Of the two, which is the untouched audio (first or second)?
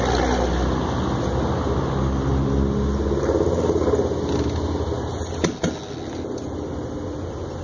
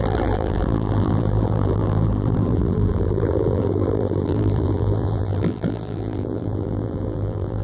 first